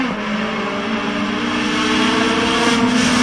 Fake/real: real